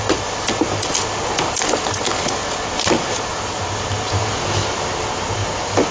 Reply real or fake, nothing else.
real